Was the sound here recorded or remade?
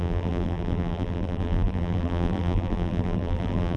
remade